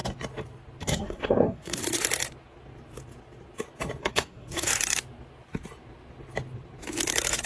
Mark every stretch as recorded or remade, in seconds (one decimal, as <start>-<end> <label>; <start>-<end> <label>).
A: 0.0-0.8 recorded; 0.8-1.8 remade; 1.8-4.0 recorded; 4.0-4.7 remade; 4.7-7.5 recorded

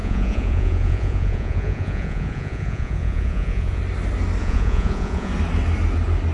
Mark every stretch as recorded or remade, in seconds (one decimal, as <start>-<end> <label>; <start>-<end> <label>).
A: 0.0-3.8 remade; 3.8-4.4 recorded; 4.4-5.3 remade; 5.3-6.3 recorded